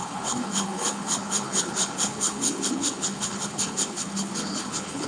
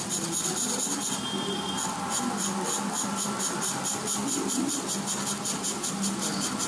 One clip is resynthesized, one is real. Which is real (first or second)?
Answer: second